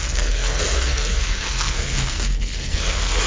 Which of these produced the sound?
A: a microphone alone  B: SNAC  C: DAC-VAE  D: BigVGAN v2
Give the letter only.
B